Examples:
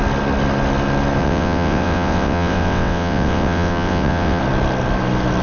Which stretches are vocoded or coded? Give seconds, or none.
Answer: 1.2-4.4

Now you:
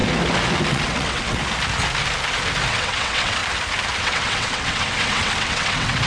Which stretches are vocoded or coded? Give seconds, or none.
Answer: 0.7-1.4; 2.7-3.4; 4.0-6.1

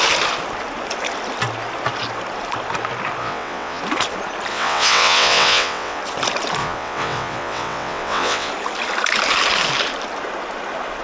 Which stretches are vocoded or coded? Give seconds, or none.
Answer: 3.2-3.8; 4.5-6.0; 6.6-8.5

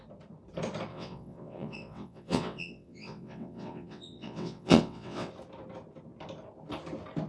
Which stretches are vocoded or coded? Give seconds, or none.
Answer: 0.9-5.3

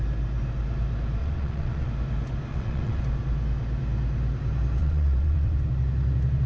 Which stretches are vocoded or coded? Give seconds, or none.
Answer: 1.2-1.9; 2.5-3.0; 4.8-5.7

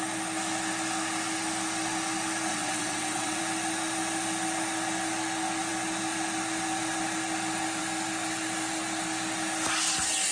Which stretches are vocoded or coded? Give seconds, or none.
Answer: 2.5-3.4

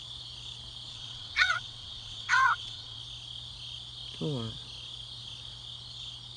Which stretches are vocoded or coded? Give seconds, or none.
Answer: 0.9-3.0